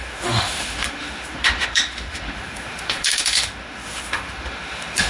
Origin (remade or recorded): remade